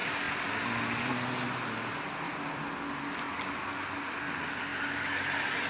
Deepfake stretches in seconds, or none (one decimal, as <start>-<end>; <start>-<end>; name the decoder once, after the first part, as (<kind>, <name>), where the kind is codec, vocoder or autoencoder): none